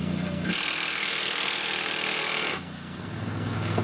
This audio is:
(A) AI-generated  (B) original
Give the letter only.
A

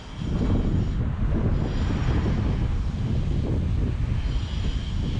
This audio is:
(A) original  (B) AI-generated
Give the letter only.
A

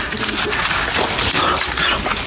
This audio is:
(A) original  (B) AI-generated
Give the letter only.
A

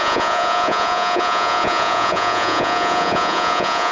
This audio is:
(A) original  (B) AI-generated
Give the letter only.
B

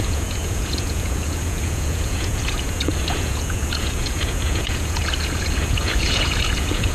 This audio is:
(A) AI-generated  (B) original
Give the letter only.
A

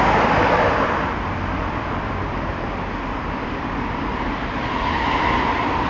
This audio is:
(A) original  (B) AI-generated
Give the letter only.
B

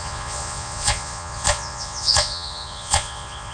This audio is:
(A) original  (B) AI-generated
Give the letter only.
B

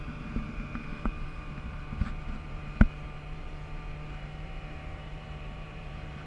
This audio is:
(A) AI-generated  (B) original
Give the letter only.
A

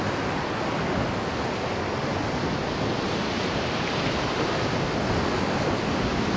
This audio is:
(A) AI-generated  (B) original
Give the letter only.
B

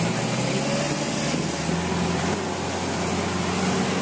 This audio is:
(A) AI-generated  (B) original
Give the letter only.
B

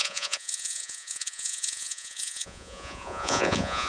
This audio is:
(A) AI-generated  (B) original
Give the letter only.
A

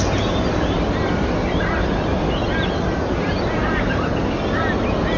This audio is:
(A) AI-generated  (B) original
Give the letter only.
B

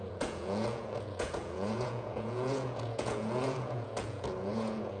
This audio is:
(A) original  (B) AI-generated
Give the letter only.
B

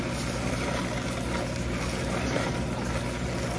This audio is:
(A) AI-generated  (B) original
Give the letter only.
B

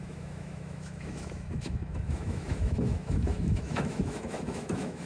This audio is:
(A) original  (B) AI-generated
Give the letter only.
B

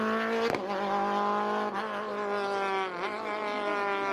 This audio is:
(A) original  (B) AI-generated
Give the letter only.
A